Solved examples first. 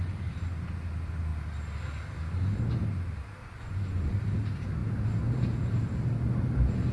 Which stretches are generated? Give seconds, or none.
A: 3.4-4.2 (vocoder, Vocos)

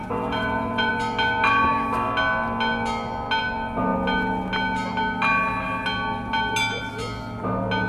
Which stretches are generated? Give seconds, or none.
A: 0.0-0.9 (vocoder, Vocos)